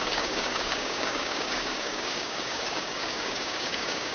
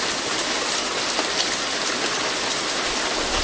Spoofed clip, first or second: first